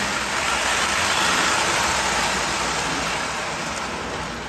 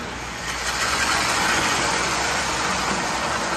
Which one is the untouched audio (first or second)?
first